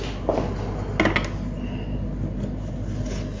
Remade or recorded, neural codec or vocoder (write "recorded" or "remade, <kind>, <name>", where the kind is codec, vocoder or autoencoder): recorded